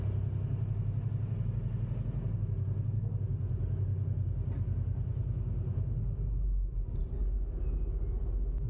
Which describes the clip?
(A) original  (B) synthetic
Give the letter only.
A